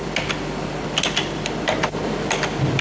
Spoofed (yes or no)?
no